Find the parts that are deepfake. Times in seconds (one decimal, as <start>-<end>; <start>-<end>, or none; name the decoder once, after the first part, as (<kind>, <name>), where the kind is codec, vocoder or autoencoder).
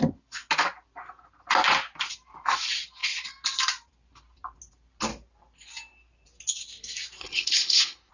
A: 7.2-8.1 (codec, HILCodec)